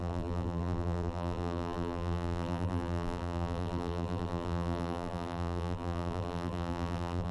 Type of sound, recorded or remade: remade